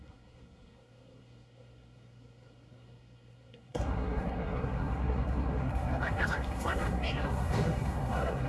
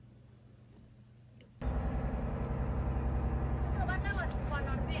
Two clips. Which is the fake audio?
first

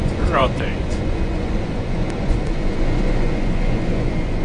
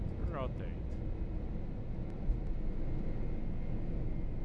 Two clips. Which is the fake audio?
first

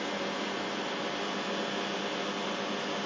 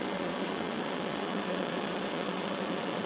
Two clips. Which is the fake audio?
second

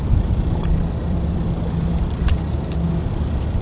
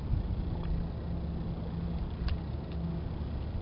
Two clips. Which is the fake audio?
first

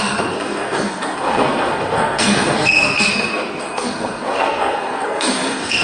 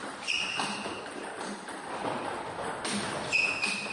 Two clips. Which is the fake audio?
first